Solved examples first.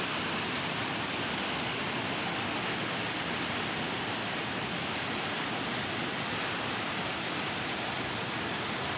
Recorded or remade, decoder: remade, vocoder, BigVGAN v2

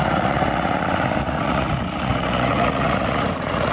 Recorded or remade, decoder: remade, vocoder, Vocos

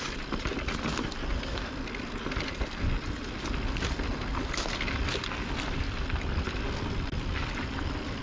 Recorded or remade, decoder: recorded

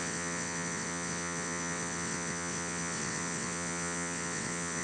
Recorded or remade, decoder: remade, vocoder, WaveNeXt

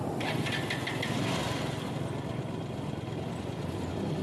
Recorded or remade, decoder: recorded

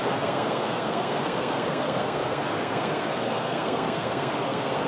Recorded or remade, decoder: remade, codec, SNAC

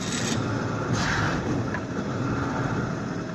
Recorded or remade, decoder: recorded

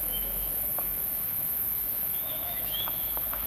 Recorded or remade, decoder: remade, autoencoder, DAC-VAE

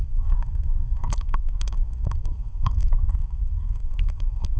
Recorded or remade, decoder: remade, codec, SNAC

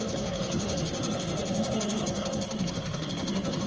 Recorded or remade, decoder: remade, codec, SNAC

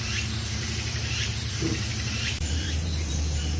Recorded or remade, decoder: remade, vocoder, BigVGAN v2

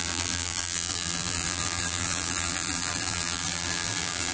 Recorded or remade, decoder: remade, vocoder, BigVGAN v2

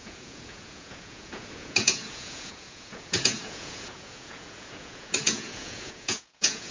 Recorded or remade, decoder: remade, vocoder, Vocos